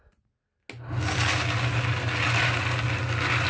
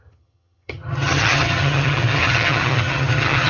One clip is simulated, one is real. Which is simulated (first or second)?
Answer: second